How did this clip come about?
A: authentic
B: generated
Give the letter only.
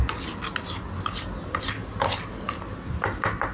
A